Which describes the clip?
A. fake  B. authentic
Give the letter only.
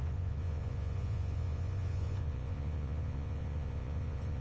A